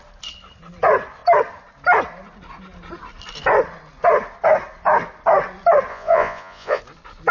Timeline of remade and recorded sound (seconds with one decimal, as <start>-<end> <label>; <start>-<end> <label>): 0.0-5.9 recorded; 5.9-6.8 remade; 6.8-7.3 recorded